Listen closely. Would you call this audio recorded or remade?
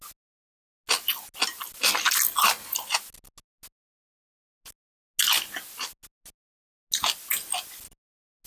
recorded